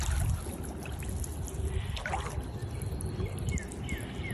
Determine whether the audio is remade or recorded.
recorded